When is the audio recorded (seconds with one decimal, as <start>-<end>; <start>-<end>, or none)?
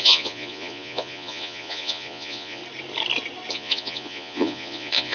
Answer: 2.6-3.5